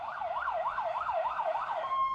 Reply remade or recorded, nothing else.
remade